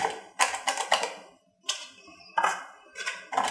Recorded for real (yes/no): yes